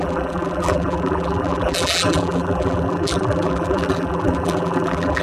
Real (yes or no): no